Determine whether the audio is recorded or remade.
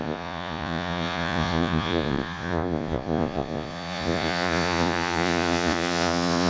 remade